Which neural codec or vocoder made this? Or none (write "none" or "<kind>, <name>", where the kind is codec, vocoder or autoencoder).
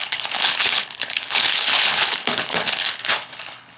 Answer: codec, HILCodec